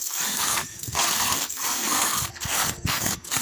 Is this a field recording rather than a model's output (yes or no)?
no